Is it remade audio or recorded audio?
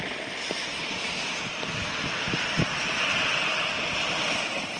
recorded